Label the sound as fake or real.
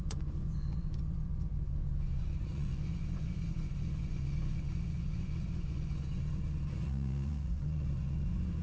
fake